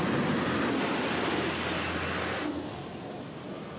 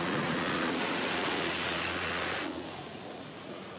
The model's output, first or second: second